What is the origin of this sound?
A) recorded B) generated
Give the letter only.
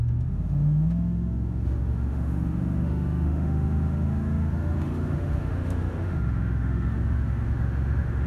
B